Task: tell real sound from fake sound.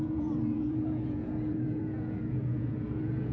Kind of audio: fake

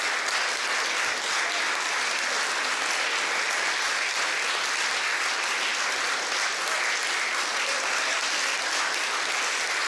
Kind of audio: real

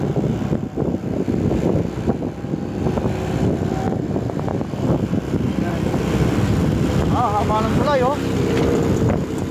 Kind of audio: real